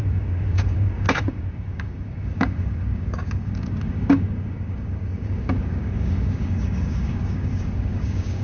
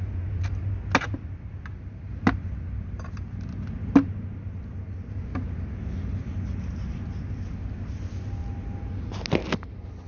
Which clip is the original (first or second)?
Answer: second